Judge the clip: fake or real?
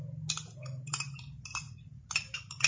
real